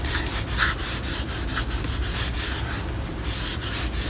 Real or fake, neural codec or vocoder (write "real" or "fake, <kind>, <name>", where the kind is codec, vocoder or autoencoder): real